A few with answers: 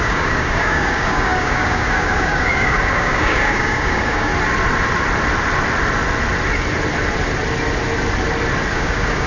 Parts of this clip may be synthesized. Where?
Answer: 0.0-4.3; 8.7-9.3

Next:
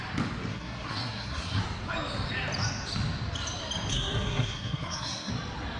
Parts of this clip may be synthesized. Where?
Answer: 0.5-1.6; 3.9-5.3

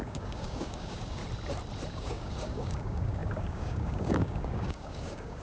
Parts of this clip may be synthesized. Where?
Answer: 0.0-1.2; 1.9-5.4